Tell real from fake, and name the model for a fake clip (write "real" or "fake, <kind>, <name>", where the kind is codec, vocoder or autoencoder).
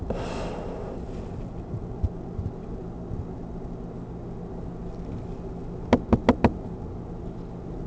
real